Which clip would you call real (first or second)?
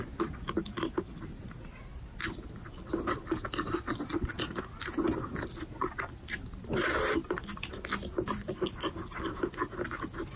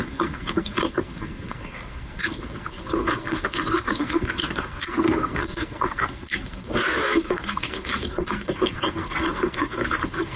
first